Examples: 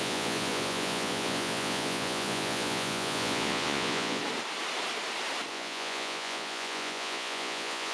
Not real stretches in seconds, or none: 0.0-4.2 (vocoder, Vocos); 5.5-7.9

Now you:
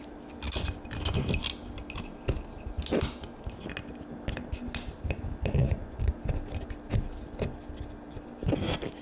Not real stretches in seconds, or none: 5.6-6.2 (vocoder, Vocos)

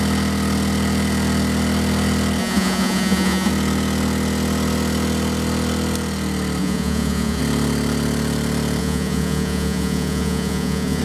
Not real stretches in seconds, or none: 2.4-3.5 (vocoder, Vocos); 6.6-7.4; 8.8-11.0

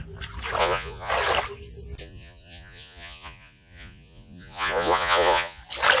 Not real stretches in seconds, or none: 0.6-1.1 (vocoder, Vocos); 2.0-5.6

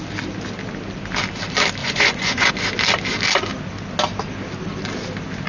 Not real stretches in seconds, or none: 1.8-2.5 (vocoder, Vocos)